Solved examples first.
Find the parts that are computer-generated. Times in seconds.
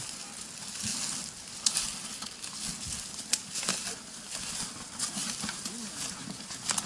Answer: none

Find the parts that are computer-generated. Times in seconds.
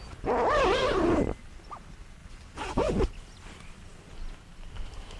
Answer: 2.2-2.9 (vocoder, Vocos)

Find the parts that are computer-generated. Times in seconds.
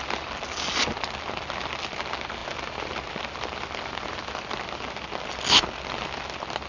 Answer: none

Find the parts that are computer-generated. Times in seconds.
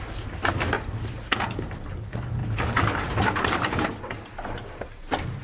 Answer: none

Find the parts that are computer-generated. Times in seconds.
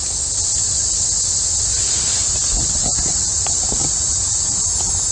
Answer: 0.0-0.6 (vocoder, Vocos); 3.8-5.1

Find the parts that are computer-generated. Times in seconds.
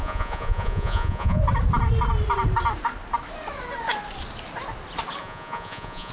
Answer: 0.0-1.4 (vocoder, Vocos); 5.2-6.1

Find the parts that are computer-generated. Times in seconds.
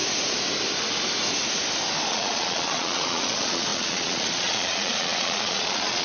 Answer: 2.1-6.0 (vocoder, Vocos)